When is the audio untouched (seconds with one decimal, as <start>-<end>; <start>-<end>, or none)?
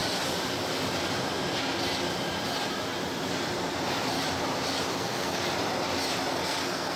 0.0-4.9; 5.4-6.3